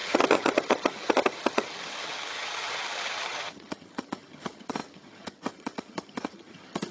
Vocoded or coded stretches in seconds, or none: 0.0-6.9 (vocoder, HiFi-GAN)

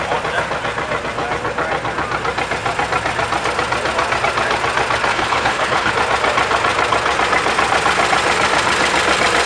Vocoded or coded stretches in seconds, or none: 5.1-5.9 (codec, HILCodec)